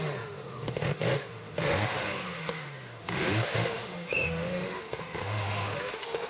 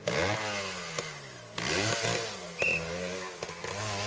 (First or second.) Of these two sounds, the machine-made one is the first